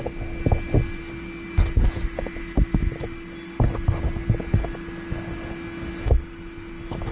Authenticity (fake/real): real